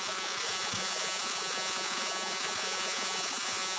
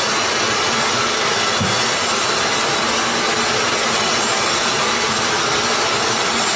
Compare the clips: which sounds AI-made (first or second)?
first